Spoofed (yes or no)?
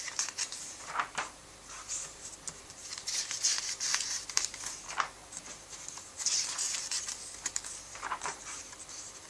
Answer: yes